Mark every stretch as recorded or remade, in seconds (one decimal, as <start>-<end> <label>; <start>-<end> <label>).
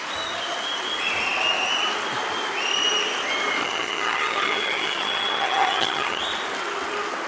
0.0-3.6 recorded; 3.6-6.2 remade; 6.2-7.3 recorded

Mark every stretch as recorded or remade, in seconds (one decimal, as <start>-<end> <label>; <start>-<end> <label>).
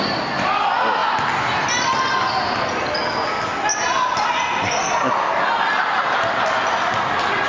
0.0-7.5 recorded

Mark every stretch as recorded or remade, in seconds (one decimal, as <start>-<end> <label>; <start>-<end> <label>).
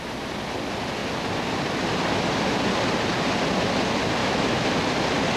0.0-4.2 recorded; 4.2-4.7 remade; 4.7-5.4 recorded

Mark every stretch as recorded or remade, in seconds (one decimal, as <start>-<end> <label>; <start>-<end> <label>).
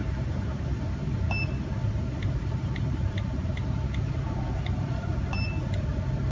0.0-1.3 remade; 1.3-1.8 recorded; 1.8-5.2 remade; 5.2-6.3 recorded